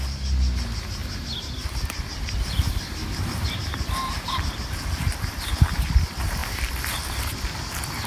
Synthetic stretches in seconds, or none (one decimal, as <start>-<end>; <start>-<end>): 6.4-7.4